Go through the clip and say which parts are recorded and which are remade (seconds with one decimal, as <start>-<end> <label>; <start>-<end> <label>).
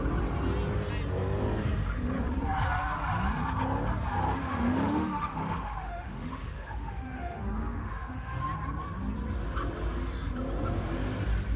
0.0-4.4 recorded; 4.4-8.4 remade; 8.4-11.6 recorded